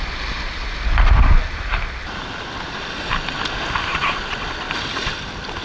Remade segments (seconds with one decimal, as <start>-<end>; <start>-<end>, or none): 3.9-4.7